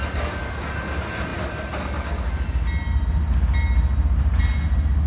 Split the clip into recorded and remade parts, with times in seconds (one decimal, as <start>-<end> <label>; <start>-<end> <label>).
0.0-5.1 recorded